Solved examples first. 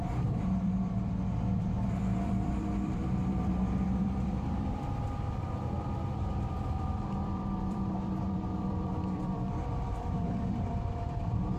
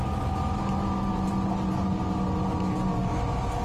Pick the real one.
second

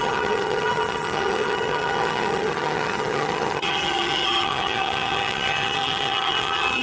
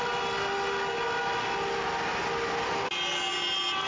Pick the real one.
second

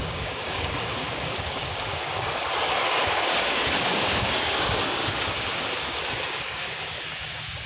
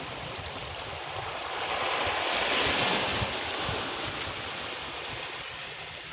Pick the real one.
second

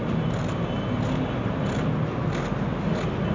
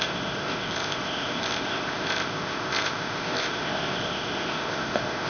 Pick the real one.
first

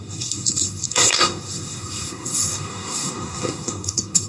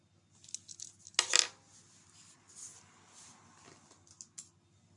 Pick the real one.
second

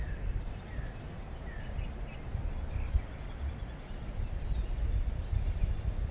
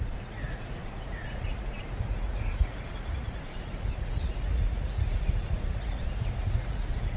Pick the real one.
first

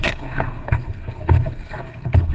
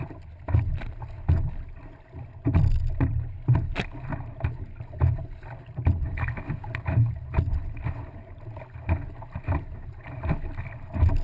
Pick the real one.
second